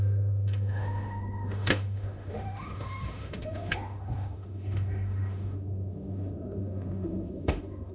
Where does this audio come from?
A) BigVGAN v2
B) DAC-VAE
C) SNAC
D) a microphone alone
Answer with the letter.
B